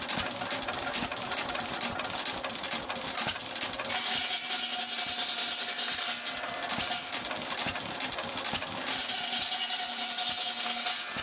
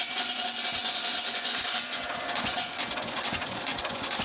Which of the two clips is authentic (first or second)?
first